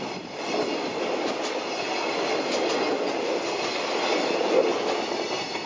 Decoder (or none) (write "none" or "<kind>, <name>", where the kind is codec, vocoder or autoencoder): none